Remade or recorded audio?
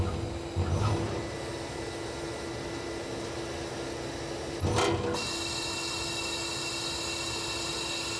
recorded